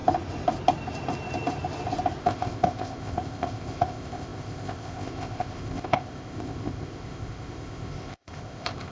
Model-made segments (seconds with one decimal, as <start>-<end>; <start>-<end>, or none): 2.2-8.9